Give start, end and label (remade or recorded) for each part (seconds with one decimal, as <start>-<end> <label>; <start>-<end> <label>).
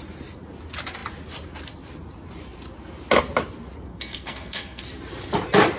0.0-3.9 recorded; 3.9-4.8 remade; 4.8-5.8 recorded